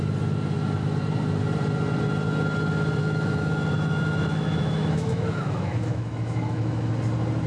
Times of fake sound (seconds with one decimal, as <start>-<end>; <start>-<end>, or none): 3.0-6.9

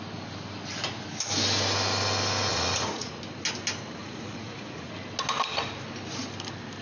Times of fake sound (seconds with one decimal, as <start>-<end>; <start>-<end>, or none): 2.5-3.2; 4.0-4.9